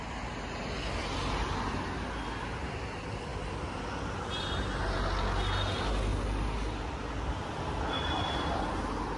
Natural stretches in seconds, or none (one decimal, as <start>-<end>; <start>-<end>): 0.0-9.2